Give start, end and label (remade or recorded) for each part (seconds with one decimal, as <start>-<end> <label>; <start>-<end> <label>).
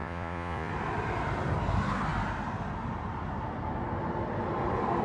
0.0-0.7 remade; 0.7-5.0 recorded